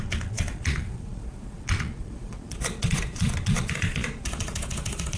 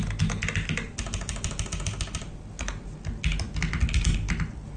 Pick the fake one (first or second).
first